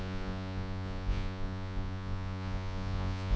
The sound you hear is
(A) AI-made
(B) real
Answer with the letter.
A